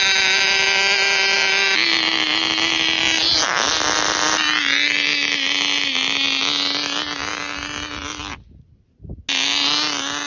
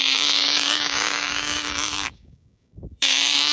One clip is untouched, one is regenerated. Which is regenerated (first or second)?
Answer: second